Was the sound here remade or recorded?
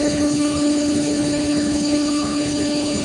remade